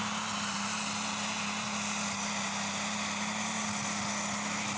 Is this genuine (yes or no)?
yes